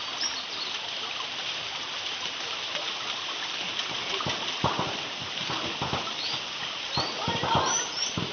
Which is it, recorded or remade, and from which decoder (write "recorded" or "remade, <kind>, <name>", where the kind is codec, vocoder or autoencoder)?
recorded